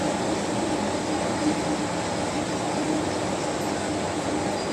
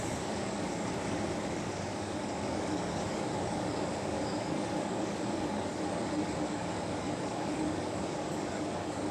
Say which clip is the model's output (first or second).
second